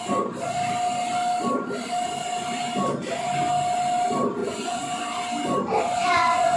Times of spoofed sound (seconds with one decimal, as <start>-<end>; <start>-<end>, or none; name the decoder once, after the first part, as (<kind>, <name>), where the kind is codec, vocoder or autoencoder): 4.4-5.0 (vocoder, Vocos); 6.0-6.6